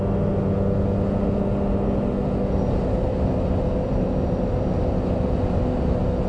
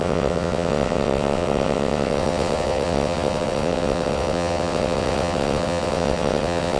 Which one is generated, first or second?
second